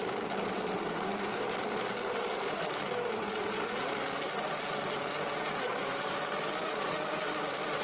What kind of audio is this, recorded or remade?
recorded